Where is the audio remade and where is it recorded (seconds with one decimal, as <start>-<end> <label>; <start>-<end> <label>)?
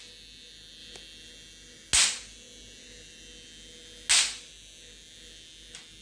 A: 0.0-6.0 recorded